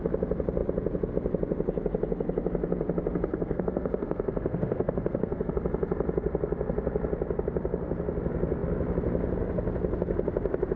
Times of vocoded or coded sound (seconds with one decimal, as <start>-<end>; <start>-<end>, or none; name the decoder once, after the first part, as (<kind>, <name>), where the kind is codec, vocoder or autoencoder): 3.3-5.5 (codec, SNAC)